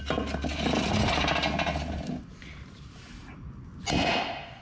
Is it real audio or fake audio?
real